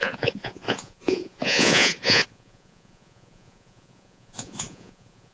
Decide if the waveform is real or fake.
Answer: fake